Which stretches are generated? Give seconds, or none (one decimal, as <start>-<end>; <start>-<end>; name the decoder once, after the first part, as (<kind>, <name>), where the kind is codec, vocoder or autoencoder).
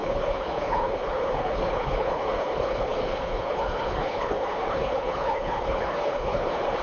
0.0-6.8 (codec, HILCodec)